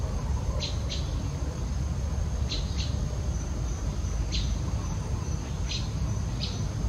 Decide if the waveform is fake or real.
real